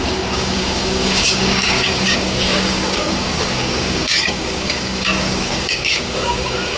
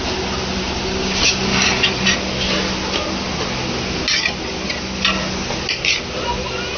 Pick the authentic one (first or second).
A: second